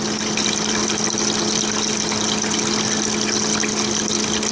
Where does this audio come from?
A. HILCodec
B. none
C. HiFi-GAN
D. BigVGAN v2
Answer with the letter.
B